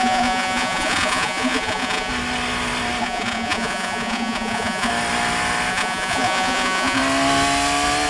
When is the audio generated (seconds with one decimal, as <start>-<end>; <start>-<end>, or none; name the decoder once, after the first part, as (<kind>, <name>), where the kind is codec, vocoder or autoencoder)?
0.0-2.1 (vocoder, Vocos); 3.0-4.9; 5.7-7.0